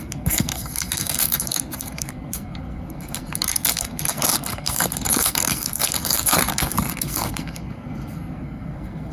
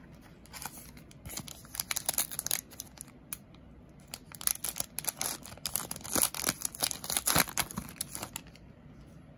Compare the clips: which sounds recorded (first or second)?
second